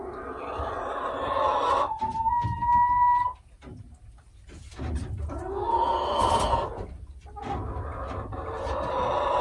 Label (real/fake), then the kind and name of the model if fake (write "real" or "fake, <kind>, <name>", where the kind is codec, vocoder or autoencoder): real